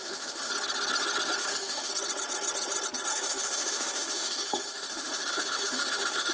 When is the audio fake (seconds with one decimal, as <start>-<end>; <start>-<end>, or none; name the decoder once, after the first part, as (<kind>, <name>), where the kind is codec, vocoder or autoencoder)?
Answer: 0.0-0.5 (autoencoder, DAC-VAE); 1.4-1.9; 3.1-6.3

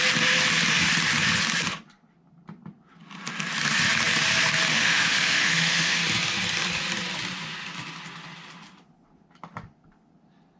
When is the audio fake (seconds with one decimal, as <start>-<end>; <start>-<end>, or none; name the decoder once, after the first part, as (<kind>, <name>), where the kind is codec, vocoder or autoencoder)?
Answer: 4.7-6.0 (autoencoder, DAC-VAE)

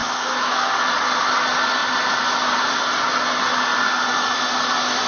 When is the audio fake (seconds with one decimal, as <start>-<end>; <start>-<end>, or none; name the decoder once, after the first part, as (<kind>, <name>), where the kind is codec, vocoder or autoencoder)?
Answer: 0.0-0.7 (autoencoder, DAC-VAE)